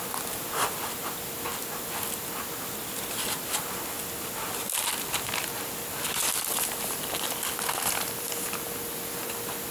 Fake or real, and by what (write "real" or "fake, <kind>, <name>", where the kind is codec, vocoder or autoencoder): real